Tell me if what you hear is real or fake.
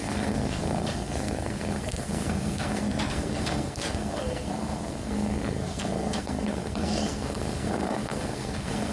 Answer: fake